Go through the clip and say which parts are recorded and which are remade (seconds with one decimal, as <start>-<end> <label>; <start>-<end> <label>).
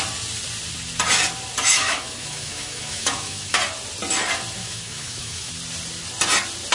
0.0-1.7 recorded; 1.7-3.6 remade; 3.6-4.6 recorded; 4.6-5.5 remade; 5.5-6.7 recorded